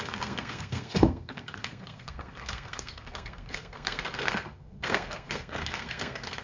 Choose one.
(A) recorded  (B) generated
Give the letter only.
B